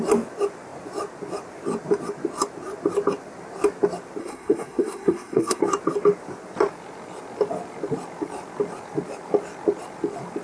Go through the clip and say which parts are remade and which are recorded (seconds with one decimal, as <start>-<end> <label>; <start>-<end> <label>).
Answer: 0.0-4.2 recorded; 4.2-5.6 remade; 5.6-10.4 recorded